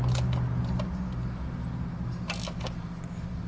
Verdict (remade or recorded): recorded